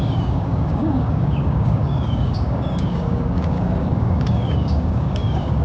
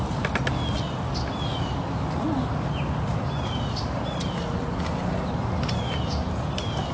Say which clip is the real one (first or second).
second